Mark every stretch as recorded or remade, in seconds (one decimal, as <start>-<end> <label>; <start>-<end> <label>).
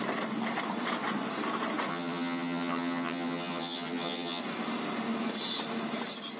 0.0-1.9 recorded; 1.9-4.4 remade; 4.4-6.4 recorded